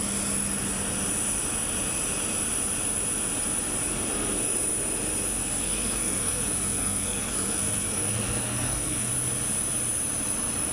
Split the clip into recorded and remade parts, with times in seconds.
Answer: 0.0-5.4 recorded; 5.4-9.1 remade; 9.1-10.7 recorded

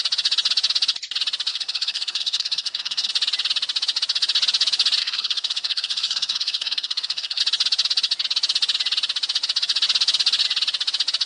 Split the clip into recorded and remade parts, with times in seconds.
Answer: 0.0-1.5 recorded; 1.5-3.1 remade; 3.1-5.0 recorded; 5.0-7.4 remade; 7.4-11.3 recorded